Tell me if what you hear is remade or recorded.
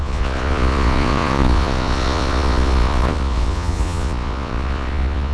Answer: remade